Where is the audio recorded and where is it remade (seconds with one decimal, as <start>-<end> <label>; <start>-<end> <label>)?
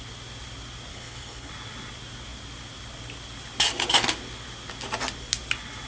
0.0-0.9 recorded; 0.9-1.5 remade; 1.5-5.9 recorded